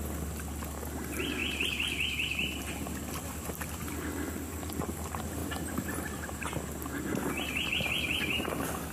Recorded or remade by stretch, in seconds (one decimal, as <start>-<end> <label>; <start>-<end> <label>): 0.0-8.9 recorded